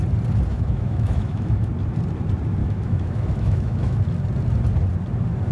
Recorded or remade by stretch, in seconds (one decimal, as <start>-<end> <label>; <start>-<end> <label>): 0.0-0.5 recorded; 0.5-1.7 remade; 1.7-2.6 recorded; 2.6-4.0 remade; 4.0-5.5 recorded